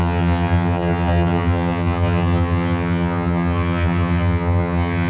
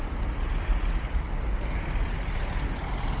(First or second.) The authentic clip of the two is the second